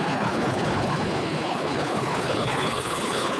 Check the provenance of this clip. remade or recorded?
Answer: remade